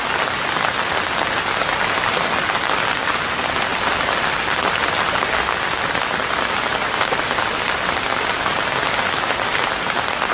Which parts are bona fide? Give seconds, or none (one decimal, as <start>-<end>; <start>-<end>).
0.0-10.3